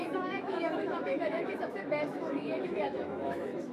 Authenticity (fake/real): fake